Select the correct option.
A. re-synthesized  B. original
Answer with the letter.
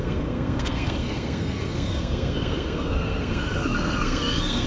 A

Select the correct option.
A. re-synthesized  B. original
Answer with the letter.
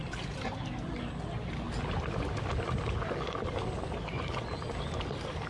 B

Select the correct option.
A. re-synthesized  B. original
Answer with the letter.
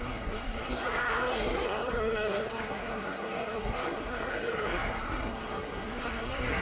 A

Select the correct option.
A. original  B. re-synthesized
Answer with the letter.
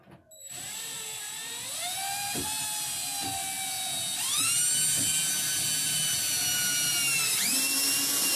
A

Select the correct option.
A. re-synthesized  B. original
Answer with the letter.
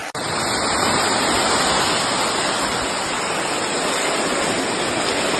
B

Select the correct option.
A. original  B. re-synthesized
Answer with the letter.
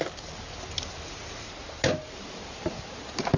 A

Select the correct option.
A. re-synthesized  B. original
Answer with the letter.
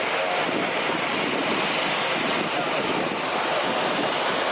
B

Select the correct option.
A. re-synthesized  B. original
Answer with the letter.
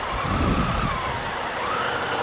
B